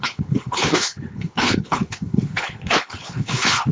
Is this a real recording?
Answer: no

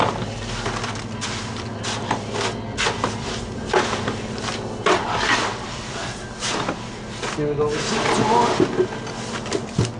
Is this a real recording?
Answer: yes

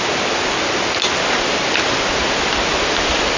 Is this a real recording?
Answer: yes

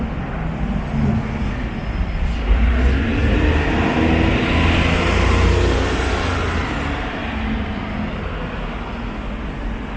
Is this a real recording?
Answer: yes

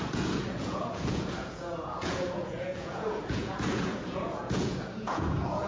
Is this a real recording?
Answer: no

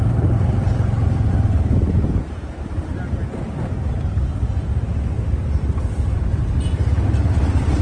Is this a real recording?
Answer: yes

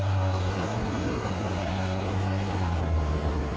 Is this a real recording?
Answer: no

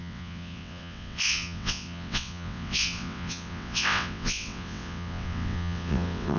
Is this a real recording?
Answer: no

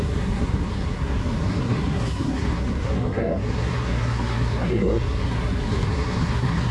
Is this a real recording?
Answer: no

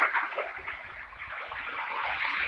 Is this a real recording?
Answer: yes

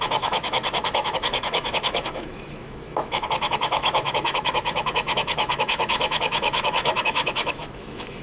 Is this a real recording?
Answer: no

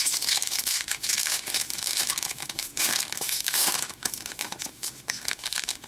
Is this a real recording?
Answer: no